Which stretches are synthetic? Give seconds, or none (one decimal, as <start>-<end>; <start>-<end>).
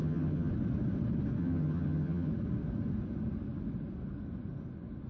0.0-0.5; 1.4-2.3